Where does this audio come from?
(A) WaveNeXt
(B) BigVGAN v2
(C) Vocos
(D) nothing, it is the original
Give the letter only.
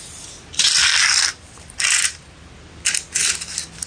D